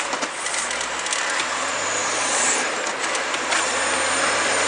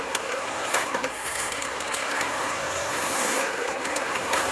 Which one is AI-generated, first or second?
second